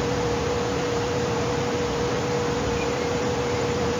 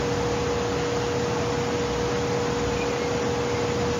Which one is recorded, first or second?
second